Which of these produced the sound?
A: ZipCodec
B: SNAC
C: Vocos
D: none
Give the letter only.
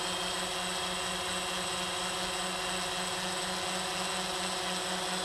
D